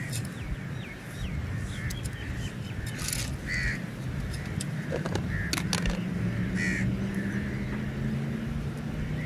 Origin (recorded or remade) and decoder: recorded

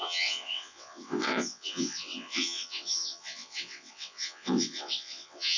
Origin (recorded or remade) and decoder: remade, vocoder, WaveNeXt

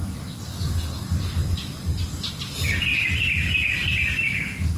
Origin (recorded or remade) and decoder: recorded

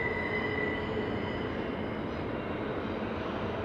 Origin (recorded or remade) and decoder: recorded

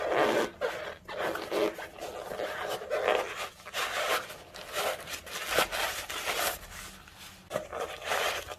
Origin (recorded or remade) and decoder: recorded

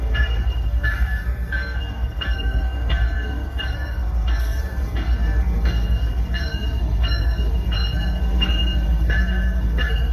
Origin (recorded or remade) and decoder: remade, codec, SNAC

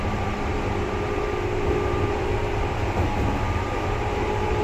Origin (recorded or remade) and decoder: remade, vocoder, BigVGAN v2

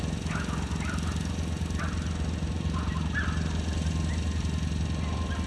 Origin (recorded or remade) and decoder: recorded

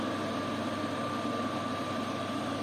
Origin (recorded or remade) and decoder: recorded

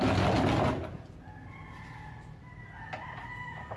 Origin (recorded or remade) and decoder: recorded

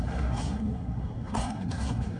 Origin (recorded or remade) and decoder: remade, codec, SNAC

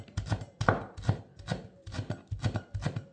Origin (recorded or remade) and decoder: recorded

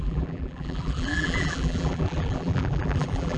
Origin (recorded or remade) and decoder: remade, vocoder, BigVGAN v2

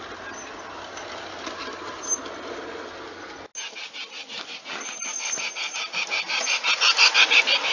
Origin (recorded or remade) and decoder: recorded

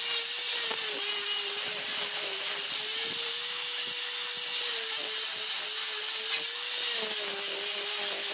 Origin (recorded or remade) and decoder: recorded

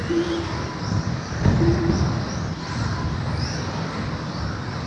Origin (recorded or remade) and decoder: remade, vocoder, BigVGAN v2